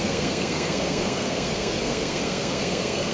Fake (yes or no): yes